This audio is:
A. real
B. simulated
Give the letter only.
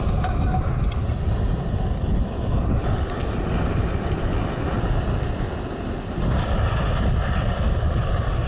A